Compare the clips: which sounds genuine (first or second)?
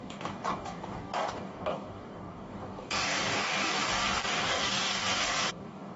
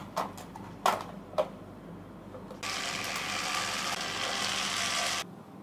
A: second